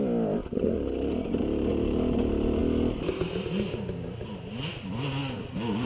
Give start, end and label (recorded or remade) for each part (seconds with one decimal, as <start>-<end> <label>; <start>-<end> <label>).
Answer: 0.0-5.9 recorded